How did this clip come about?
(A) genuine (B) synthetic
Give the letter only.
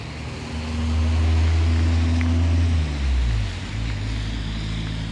A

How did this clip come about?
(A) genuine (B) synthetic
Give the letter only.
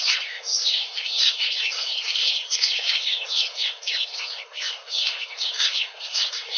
B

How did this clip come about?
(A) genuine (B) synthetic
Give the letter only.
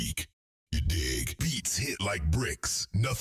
A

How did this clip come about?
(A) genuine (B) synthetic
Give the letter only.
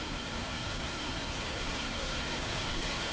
B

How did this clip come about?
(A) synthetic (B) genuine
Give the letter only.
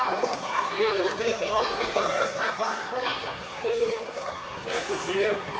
A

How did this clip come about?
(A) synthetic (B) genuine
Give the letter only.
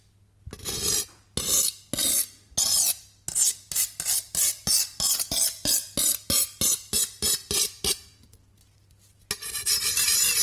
B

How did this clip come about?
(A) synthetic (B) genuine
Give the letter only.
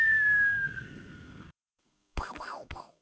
A